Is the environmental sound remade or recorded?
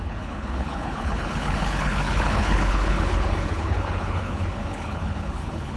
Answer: remade